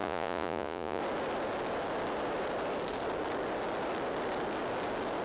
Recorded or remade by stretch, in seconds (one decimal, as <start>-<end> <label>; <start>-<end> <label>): 0.0-1.0 remade; 1.0-5.2 recorded